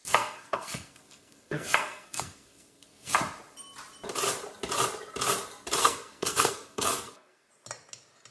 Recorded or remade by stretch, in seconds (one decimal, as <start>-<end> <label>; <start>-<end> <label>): 0.0-3.1 remade; 3.1-5.8 recorded; 5.8-7.5 remade; 7.5-8.3 recorded